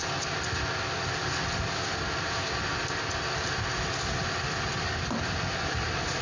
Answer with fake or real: real